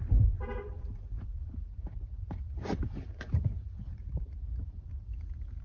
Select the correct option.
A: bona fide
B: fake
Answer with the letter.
B